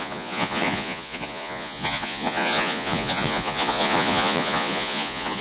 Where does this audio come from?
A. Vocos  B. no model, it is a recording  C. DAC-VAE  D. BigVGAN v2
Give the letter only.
A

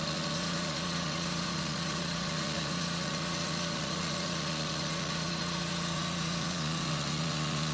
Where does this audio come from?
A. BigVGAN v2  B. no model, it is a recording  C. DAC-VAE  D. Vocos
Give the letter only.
D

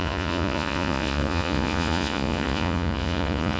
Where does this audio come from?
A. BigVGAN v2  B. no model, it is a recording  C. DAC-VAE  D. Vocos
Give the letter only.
D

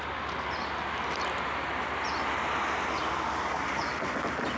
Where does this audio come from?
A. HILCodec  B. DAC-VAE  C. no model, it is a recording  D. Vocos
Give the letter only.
C